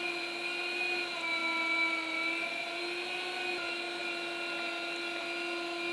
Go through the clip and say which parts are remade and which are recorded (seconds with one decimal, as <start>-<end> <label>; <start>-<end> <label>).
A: 0.0-5.9 recorded